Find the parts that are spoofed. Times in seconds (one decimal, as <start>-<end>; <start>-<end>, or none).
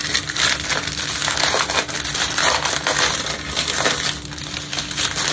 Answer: none